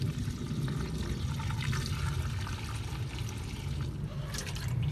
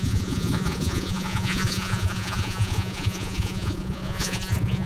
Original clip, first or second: first